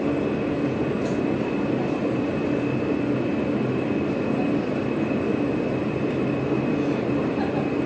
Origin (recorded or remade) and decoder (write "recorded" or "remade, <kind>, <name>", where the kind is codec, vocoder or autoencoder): recorded